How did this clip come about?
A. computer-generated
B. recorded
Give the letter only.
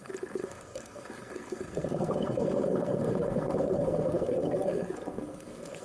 A